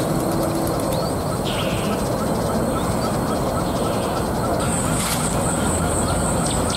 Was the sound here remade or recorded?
recorded